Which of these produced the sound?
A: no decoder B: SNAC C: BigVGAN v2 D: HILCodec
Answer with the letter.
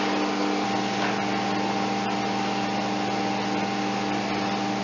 A